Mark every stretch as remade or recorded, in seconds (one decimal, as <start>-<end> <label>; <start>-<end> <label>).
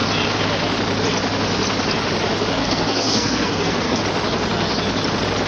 0.0-2.6 recorded; 2.6-4.0 remade; 4.0-5.5 recorded